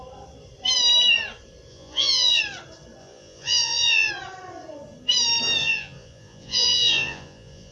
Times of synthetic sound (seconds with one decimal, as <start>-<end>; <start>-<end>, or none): 1.7-2.4; 3.0-4.1; 5.6-7.7